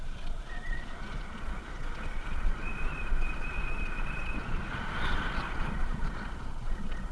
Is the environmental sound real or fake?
fake